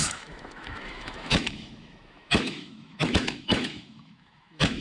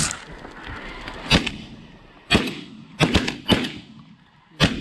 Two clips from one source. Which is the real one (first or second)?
second